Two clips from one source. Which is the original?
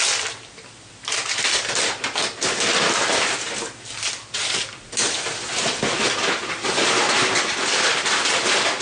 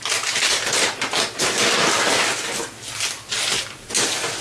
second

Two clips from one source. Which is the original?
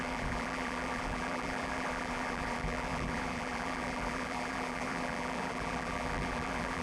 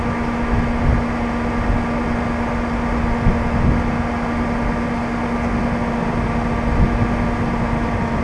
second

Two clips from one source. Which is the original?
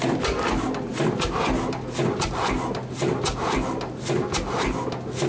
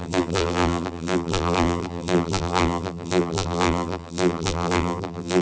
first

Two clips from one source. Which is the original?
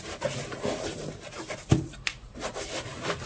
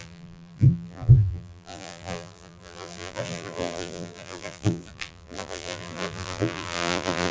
first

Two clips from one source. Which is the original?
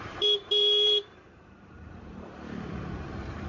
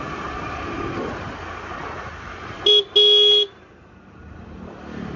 second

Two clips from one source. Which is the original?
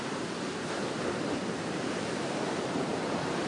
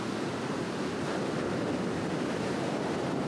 second